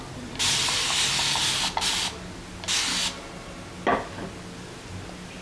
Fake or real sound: real